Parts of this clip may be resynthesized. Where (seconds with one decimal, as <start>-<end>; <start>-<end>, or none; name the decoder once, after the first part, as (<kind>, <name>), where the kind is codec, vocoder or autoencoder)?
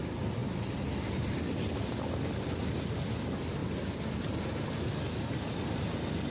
none